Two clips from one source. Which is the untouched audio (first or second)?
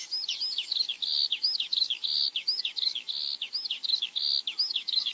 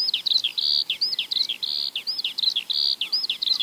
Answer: second